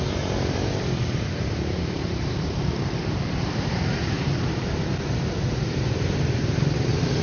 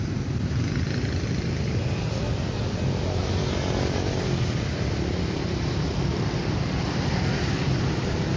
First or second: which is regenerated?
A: first